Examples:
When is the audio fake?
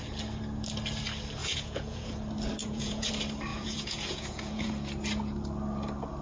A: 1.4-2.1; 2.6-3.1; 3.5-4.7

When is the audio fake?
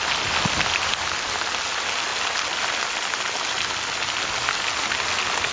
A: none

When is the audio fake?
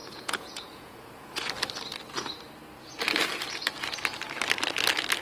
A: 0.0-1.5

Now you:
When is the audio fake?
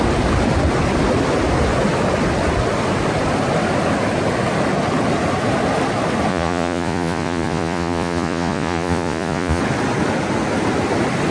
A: 6.3-9.6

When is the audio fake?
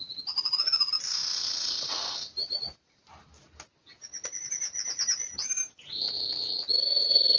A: none